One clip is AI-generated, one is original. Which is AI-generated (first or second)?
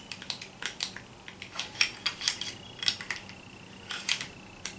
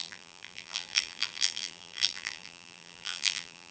second